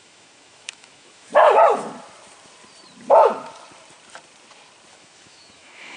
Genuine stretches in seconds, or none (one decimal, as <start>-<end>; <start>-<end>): 1.3-4.9